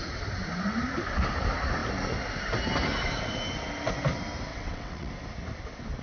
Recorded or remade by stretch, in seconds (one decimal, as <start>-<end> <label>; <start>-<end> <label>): 0.0-4.5 recorded; 4.5-5.1 remade; 5.1-6.0 recorded